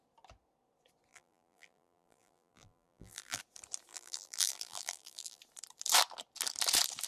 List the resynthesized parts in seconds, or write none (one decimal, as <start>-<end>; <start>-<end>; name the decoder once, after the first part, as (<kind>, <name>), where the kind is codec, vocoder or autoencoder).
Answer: 1.1-3.4 (vocoder, BigVGAN v2); 3.9-5.4